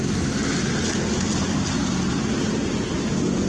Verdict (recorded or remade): recorded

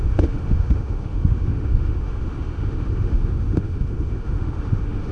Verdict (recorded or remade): remade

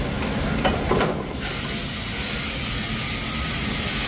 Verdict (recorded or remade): recorded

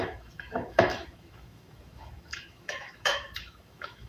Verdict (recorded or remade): remade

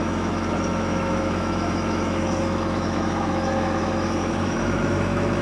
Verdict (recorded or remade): remade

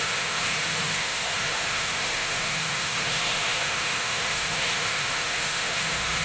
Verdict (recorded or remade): remade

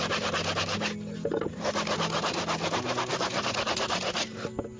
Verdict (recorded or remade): recorded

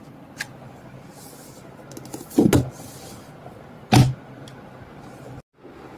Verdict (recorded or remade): recorded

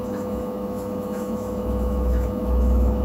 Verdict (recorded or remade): remade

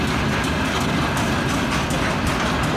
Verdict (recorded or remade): recorded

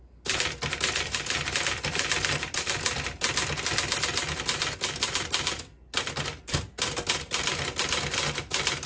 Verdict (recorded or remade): recorded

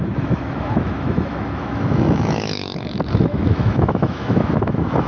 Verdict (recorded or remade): remade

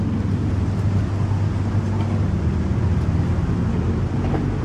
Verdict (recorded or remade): recorded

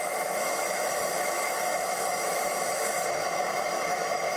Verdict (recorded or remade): remade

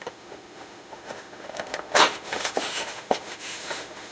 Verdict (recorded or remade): remade